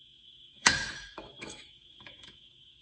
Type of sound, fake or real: fake